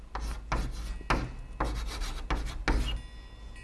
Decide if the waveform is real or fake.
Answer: real